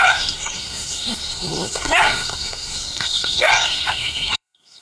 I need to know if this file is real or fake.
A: fake